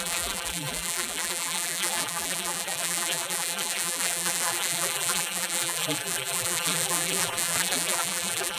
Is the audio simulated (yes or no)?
yes